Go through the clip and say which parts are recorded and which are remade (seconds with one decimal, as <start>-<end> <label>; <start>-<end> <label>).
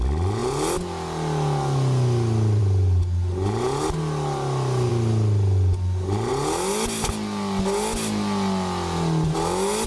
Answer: 0.0-9.9 recorded